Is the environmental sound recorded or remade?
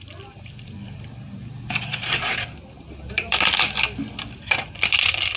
remade